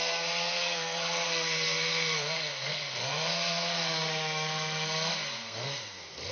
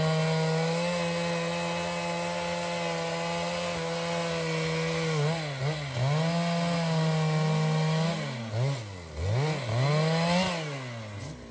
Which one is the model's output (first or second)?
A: first